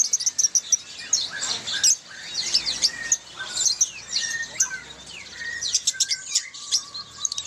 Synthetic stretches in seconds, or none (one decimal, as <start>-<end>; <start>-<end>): none

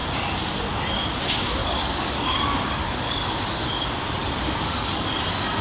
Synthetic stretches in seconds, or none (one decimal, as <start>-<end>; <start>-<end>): 1.6-2.4; 2.8-3.3; 4.2-5.1

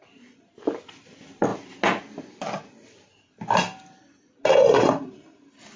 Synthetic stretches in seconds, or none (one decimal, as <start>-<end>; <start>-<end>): none

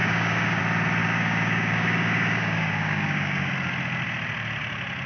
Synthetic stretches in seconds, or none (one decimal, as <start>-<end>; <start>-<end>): 0.0-0.6; 1.0-3.5

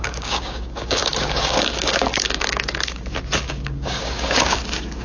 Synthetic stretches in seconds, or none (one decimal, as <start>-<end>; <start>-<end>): 0.0-5.0